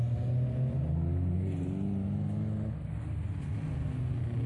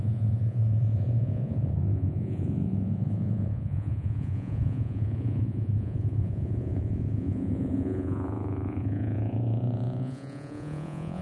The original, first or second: first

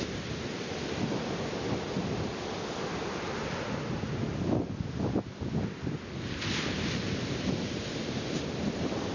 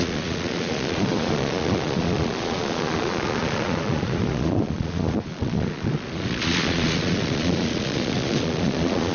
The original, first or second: first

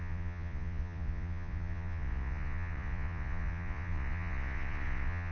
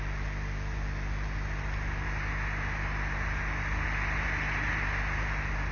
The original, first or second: second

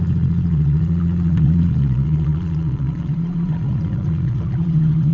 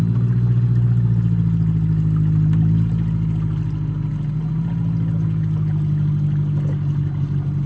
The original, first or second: second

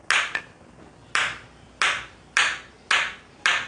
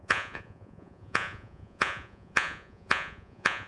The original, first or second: first